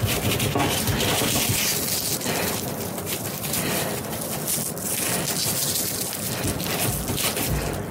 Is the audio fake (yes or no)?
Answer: no